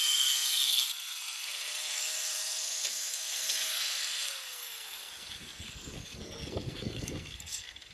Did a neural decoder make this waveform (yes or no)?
yes